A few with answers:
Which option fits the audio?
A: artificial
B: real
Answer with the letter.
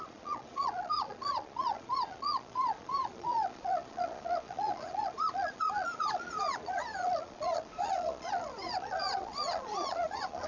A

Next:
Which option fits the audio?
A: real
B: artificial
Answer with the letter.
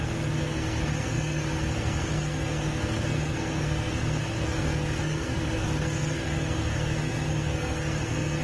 B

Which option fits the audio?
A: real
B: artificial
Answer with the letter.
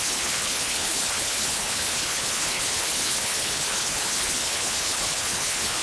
B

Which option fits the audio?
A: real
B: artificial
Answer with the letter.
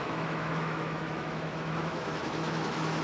B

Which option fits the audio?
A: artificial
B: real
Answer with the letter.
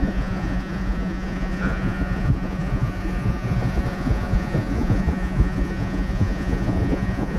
A